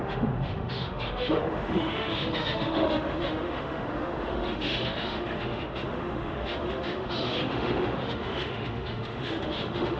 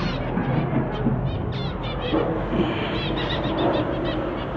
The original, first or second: second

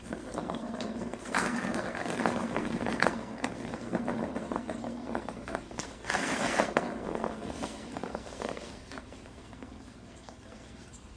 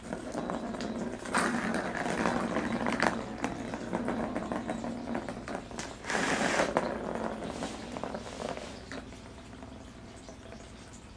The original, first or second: second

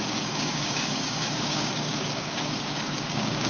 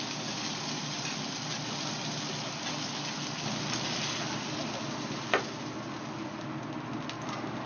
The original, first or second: second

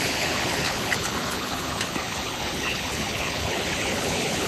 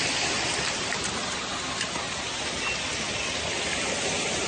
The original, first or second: second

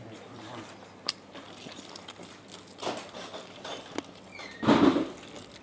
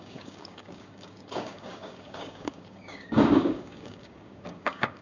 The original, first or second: first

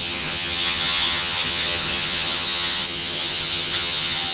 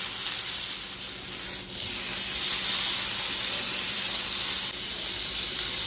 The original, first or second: second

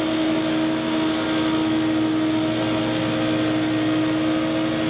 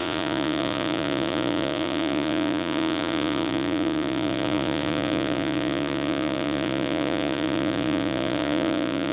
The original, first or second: first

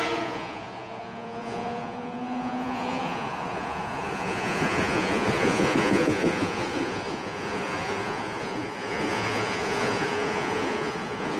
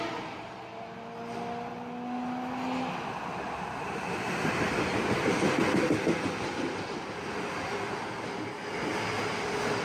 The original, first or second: second